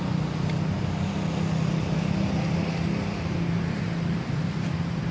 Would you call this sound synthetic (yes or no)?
no